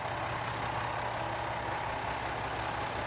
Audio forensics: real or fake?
real